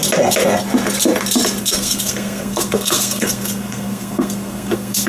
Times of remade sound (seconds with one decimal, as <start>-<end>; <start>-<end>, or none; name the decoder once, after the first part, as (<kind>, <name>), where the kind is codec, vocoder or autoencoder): 1.6-5.1 (codec, SNAC)